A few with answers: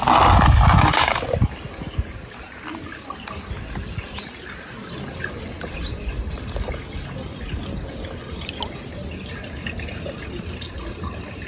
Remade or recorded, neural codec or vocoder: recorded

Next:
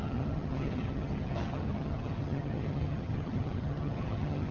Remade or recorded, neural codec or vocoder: remade, vocoder, HiFi-GAN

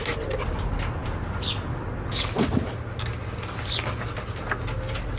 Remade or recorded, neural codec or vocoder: recorded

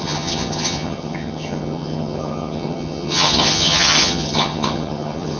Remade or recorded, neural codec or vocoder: remade, vocoder, HiFi-GAN